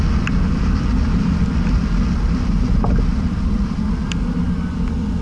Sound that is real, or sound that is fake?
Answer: real